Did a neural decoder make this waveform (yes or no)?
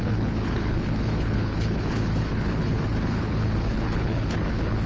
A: yes